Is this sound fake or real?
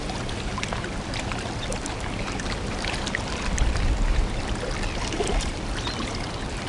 real